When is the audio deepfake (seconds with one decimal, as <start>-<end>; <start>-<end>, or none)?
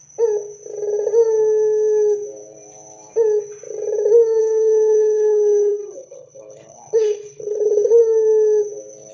4.4-8.0